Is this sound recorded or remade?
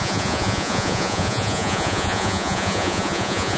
remade